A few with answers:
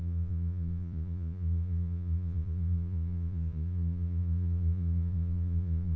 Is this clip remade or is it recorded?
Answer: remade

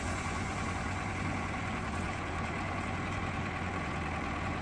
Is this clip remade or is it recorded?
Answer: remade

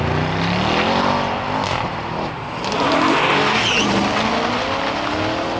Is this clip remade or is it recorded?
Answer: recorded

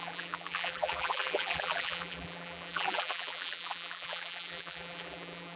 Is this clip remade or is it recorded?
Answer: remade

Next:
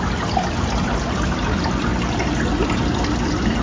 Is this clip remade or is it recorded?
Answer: recorded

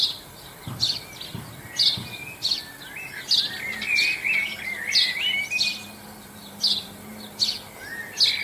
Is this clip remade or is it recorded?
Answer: recorded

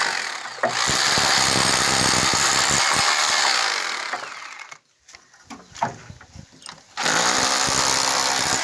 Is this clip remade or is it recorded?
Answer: recorded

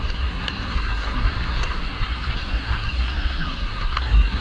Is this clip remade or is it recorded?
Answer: remade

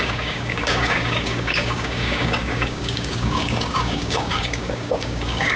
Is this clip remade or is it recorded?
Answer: remade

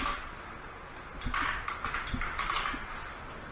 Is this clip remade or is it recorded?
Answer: recorded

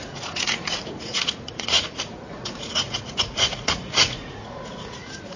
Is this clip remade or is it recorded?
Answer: remade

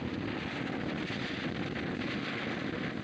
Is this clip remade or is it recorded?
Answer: recorded